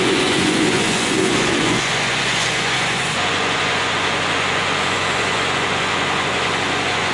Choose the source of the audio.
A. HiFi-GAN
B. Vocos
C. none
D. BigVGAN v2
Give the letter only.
B